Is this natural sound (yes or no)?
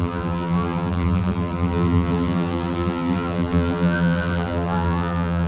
no